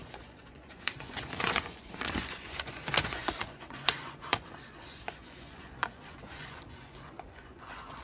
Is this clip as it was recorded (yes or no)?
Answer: no